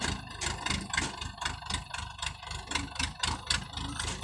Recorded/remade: recorded